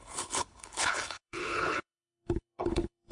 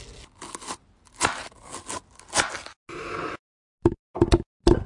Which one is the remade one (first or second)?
first